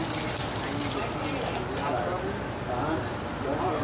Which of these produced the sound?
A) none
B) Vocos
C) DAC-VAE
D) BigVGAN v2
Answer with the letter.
A